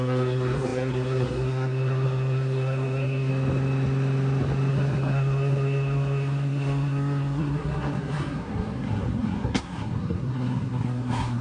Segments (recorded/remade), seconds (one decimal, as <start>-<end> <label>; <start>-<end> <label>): 0.0-3.3 remade; 3.3-4.7 recorded; 4.7-11.4 remade